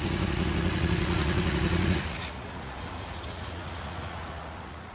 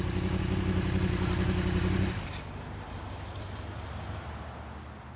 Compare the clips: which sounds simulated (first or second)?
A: first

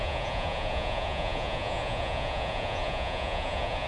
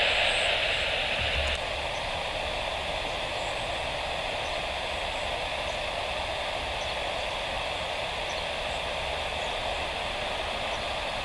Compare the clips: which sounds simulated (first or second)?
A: first